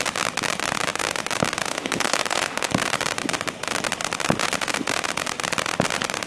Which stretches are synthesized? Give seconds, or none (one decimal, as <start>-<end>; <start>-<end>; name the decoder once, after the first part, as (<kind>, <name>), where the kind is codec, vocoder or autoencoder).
1.7-2.7 (autoencoder, DAC-VAE)